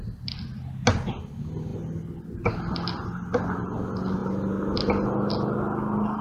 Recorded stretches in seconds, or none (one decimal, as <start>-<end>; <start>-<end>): 0.0-6.2